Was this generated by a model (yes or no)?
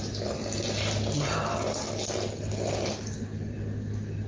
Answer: no